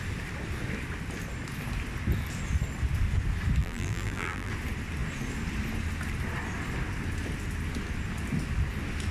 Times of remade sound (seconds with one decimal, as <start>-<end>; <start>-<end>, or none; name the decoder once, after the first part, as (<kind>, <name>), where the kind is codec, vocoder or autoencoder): 3.6-4.5 (vocoder, BigVGAN v2)

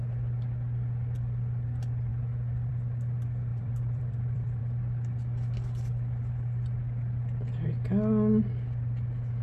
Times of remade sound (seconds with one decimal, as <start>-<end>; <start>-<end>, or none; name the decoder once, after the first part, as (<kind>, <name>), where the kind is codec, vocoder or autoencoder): 3.5-4.6 (vocoder, BigVGAN v2)

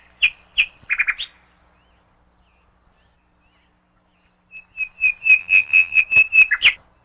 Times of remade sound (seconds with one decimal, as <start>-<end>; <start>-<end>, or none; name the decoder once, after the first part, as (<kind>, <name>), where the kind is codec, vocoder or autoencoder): 5.4-6.0 (vocoder, BigVGAN v2)

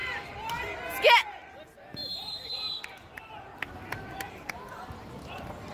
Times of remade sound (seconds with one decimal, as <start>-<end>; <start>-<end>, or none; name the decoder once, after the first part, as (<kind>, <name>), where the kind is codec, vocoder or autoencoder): 0.0-0.5 (vocoder, BigVGAN v2); 2.0-3.0; 3.5-4.5

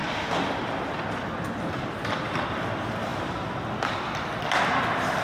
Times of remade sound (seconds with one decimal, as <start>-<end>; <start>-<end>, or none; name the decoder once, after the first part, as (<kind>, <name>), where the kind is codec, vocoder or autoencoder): 0.0-1.2 (vocoder, BigVGAN v2); 3.1-3.7

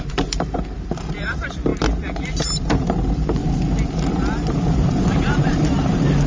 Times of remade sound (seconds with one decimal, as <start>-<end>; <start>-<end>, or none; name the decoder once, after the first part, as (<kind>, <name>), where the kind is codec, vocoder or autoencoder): 0.0-1.7 (vocoder, BigVGAN v2); 2.3-3.4; 4.1-6.3

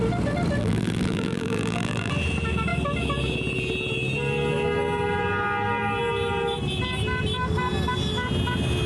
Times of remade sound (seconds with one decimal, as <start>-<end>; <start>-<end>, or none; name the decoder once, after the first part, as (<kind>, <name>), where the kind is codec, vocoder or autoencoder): 0.6-2.1 (vocoder, BigVGAN v2)

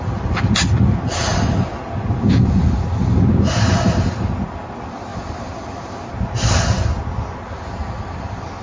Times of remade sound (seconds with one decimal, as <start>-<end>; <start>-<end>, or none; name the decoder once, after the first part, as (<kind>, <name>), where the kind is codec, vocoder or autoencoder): 5.1-6.6 (vocoder, BigVGAN v2)